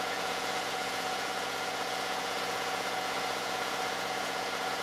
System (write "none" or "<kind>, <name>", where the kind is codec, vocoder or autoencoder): vocoder, Vocos